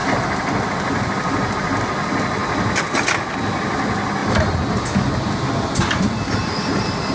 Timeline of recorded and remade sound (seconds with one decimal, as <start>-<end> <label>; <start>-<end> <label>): 0.0-7.1 recorded